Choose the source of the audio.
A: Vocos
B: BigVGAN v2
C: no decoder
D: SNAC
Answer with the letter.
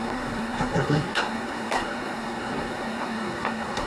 D